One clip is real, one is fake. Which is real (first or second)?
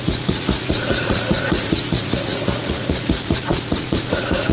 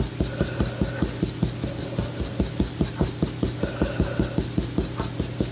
second